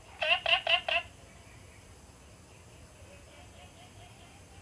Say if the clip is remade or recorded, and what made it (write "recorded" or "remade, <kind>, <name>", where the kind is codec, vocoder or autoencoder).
recorded